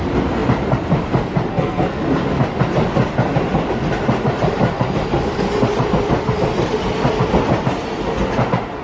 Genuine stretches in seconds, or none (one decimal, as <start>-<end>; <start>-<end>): 0.0-1.5; 2.0-8.8